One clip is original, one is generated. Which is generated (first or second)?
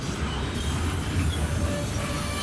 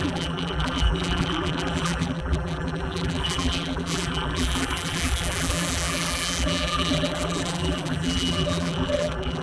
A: second